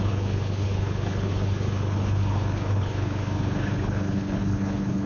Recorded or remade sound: remade